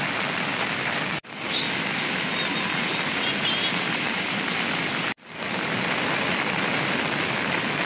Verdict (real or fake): real